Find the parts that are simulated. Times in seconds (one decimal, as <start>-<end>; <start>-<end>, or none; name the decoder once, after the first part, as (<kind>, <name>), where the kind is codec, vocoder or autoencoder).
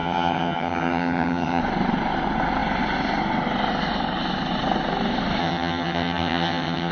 0.0-1.6 (vocoder, HiFi-GAN); 5.4-6.9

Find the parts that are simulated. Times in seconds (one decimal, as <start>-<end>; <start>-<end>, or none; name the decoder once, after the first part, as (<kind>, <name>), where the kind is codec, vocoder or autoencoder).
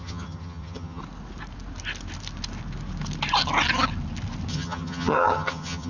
0.0-1.0 (vocoder, HiFi-GAN); 4.5-5.9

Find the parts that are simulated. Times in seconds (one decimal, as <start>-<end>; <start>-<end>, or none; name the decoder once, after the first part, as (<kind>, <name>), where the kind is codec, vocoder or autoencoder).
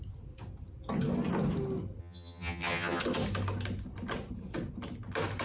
2.0-3.0 (vocoder, HiFi-GAN)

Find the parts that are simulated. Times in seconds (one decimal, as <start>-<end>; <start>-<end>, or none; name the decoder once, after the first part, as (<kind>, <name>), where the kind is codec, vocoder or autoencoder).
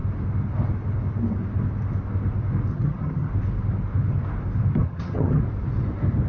2.7-3.3 (vocoder, HiFi-GAN); 4.8-5.4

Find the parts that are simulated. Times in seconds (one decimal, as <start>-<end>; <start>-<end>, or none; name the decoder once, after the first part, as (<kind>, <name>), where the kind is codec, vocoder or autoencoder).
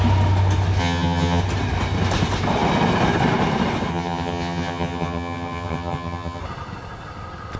0.8-1.4 (vocoder, HiFi-GAN); 3.9-6.4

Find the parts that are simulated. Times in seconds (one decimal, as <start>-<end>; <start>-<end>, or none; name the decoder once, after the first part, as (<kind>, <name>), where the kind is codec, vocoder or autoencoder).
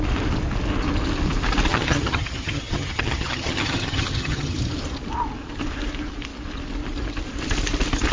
1.7-4.6 (vocoder, HiFi-GAN)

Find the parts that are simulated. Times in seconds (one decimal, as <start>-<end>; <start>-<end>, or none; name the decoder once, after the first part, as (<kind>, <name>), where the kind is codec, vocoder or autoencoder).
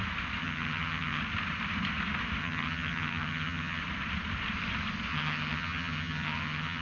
0.4-1.2 (vocoder, HiFi-GAN); 2.4-3.8; 5.1-6.8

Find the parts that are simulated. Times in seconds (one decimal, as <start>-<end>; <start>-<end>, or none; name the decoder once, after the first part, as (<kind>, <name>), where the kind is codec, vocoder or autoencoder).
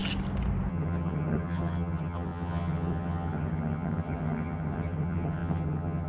0.7-6.1 (vocoder, HiFi-GAN)